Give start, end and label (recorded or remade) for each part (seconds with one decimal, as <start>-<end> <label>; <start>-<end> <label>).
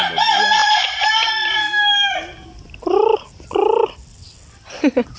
0.0-1.6 recorded; 1.6-2.1 remade; 2.1-5.2 recorded